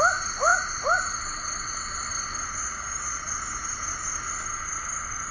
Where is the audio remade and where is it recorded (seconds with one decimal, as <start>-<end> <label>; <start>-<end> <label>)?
0.0-2.6 recorded; 2.6-3.3 remade; 3.3-5.3 recorded